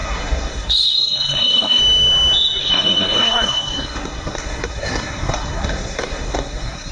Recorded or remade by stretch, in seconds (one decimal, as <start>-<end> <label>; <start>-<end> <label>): 0.0-1.8 remade; 1.8-2.6 recorded; 2.6-6.9 remade